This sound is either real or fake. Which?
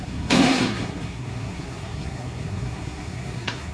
fake